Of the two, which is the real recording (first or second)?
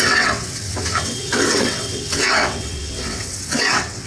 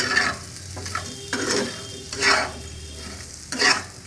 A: second